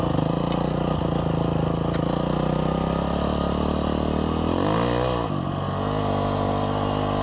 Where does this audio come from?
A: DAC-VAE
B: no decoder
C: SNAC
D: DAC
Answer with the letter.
B